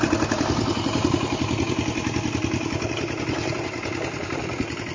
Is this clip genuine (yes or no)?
yes